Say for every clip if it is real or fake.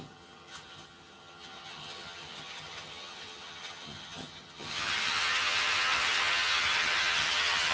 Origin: fake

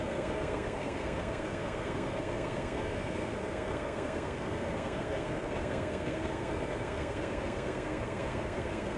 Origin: fake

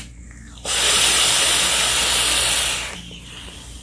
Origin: real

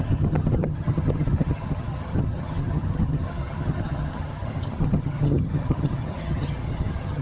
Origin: fake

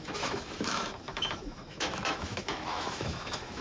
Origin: fake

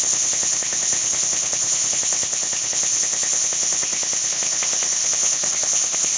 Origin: fake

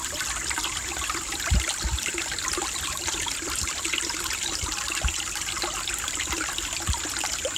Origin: real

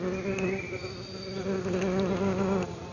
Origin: real